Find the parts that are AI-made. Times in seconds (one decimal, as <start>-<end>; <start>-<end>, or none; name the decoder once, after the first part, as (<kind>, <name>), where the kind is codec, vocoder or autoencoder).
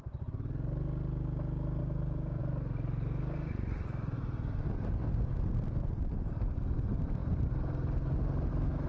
1.8-2.4 (codec, DAC)